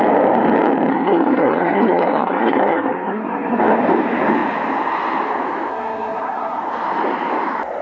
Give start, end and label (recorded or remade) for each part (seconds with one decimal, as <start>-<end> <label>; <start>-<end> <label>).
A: 0.0-0.9 recorded; 0.9-3.6 remade; 3.6-5.7 recorded; 5.7-6.6 remade; 6.6-7.8 recorded